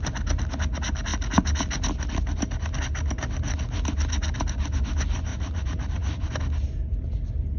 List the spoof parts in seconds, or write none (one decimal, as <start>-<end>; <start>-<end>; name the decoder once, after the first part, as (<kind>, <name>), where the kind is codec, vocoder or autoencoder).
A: 5.3-6.3 (vocoder, Vocos)